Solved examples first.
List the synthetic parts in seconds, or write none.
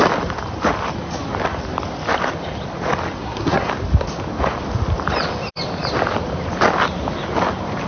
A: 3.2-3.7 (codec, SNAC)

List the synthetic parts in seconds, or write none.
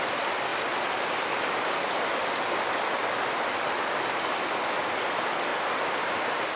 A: 0.0-0.5 (vocoder, BigVGAN v2); 4.5-5.5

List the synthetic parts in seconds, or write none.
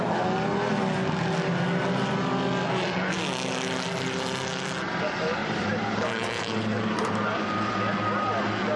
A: 5.4-7.8 (vocoder, BigVGAN v2)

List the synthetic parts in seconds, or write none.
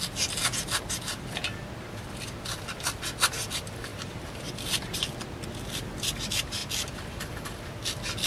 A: none